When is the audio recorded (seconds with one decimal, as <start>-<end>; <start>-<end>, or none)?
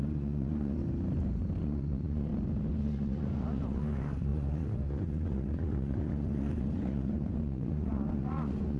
0.8-1.6; 2.3-2.8